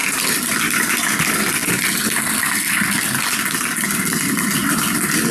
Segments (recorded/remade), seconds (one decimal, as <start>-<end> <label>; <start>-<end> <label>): 0.0-4.6 recorded; 4.6-5.3 remade